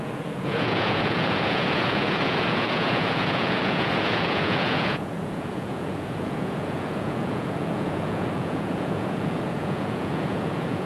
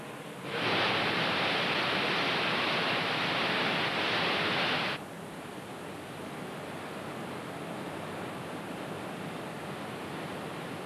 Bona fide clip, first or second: second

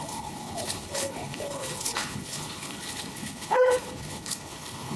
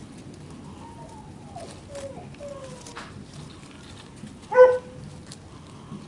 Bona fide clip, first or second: second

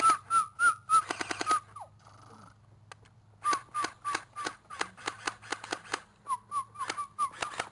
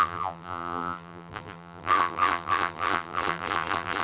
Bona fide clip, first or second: first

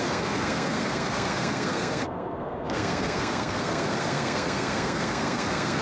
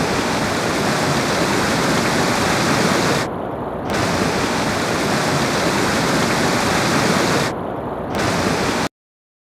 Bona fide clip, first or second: second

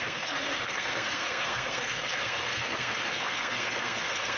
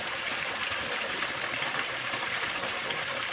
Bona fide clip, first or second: second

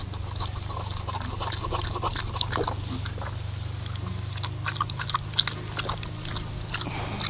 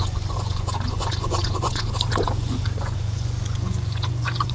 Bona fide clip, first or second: first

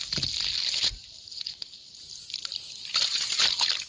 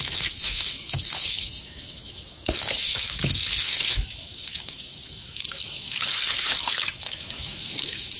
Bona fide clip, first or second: first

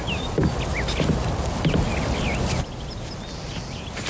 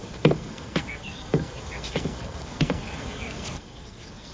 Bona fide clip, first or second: first